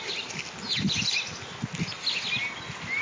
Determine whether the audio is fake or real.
real